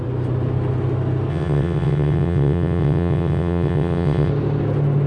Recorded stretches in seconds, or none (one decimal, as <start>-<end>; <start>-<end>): 0.0-1.3; 4.3-5.1